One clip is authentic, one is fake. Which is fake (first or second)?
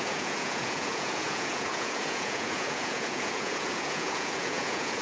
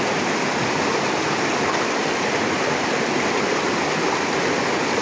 first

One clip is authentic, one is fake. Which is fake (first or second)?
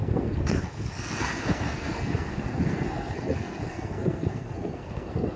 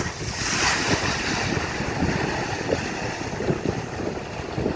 first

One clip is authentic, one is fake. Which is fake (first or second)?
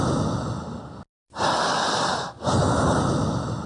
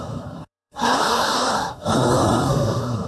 second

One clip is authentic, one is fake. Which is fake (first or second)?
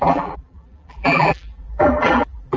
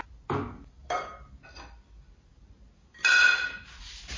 first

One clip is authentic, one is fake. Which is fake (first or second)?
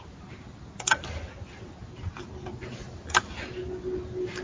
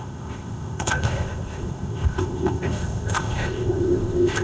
second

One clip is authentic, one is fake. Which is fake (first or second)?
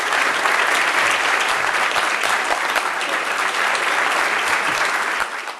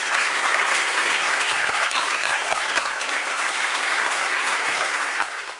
second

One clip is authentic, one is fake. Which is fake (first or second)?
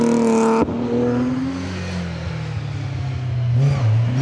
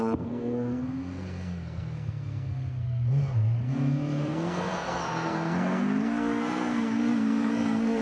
second